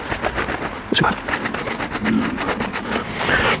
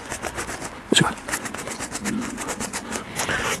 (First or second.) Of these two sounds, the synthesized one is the second